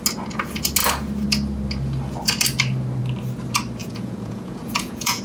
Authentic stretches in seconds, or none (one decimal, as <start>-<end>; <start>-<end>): 0.0-3.8